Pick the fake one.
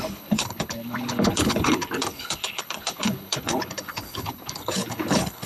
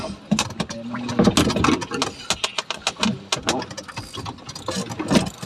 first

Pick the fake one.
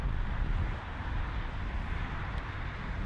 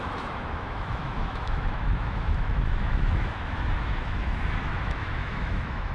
second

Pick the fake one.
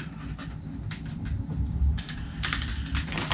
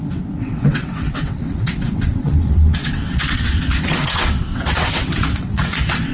second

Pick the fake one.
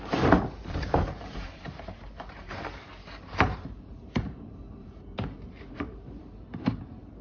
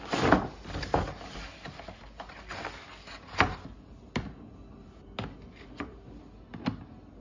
first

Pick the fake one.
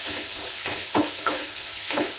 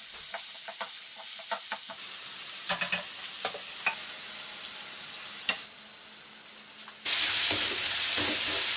first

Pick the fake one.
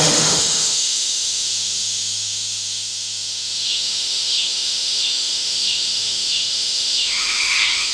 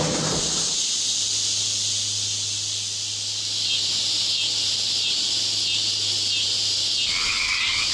first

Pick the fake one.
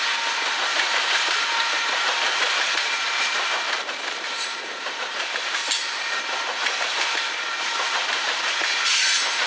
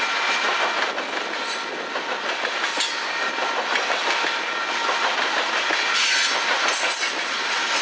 first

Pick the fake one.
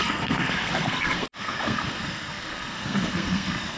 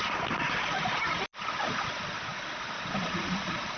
first